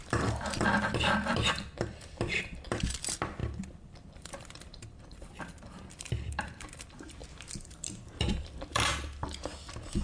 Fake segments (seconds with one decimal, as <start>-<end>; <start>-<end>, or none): 0.0-7.2; 8.0-8.9; 9.4-10.0